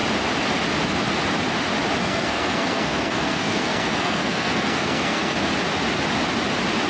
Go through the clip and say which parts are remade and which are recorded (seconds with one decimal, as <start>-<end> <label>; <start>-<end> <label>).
0.0-2.0 recorded; 2.0-5.5 remade; 5.5-6.9 recorded